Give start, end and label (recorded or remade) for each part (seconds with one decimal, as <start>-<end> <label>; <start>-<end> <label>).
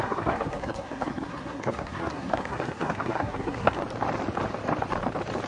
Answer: 0.0-3.8 remade; 3.8-5.5 recorded